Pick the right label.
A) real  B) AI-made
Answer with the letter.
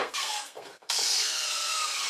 B